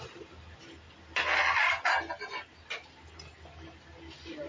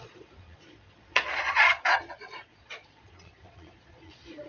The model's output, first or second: second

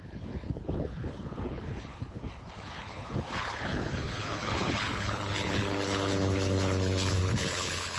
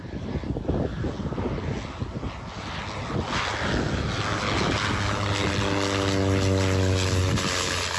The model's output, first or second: first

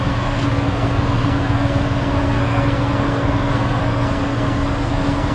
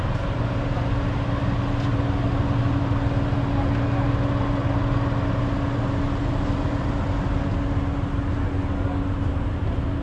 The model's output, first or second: first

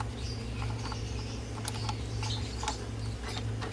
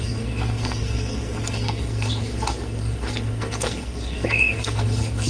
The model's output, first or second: second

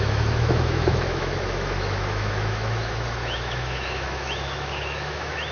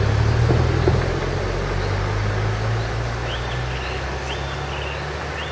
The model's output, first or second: first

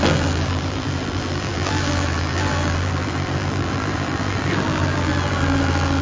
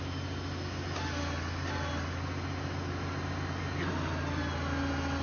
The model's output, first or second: first